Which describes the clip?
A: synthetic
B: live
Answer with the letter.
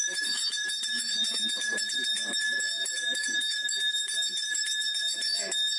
A